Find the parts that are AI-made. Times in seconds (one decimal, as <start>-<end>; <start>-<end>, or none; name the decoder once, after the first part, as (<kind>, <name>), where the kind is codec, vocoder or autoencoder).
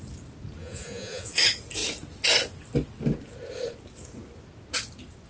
0.6-1.4 (vocoder, Vocos)